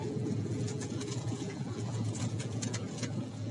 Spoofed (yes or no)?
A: yes